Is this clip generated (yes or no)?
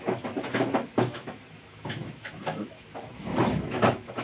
yes